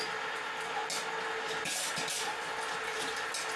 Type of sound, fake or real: real